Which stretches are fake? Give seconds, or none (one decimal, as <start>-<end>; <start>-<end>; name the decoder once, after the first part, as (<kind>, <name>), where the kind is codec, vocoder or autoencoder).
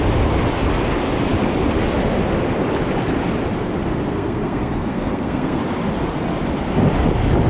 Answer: 4.1-5.6 (codec, SNAC)